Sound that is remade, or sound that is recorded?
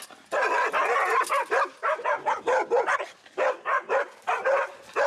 recorded